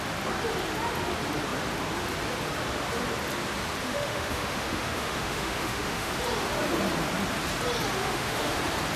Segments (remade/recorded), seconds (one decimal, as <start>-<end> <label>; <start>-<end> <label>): 0.0-3.8 recorded; 3.8-6.1 remade; 6.1-8.0 recorded; 8.0-8.6 remade; 8.6-9.0 recorded